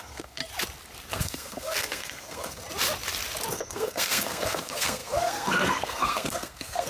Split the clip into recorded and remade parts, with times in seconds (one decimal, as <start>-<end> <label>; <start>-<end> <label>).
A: 0.0-0.4 remade; 0.4-1.1 recorded; 1.1-2.6 remade; 2.6-3.5 recorded; 3.5-6.9 remade